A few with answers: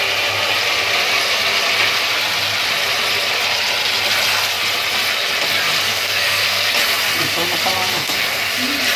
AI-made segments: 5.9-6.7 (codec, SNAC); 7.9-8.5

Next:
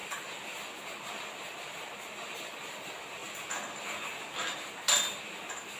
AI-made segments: none

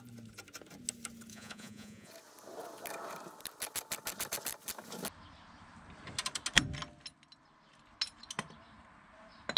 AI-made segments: 1.3-2.1 (vocoder, Vocos)

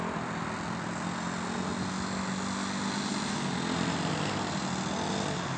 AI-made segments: none